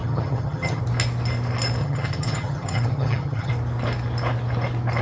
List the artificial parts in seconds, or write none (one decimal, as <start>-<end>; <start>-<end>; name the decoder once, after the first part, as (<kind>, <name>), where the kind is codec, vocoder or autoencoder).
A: 0.0-0.8 (vocoder, HiFi-GAN); 1.8-3.5